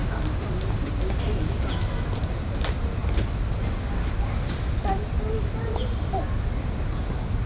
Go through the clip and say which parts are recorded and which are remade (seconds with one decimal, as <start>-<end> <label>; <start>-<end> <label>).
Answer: 0.0-7.5 recorded